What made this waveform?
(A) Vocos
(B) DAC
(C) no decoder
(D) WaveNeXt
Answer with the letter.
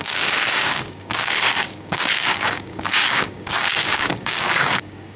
B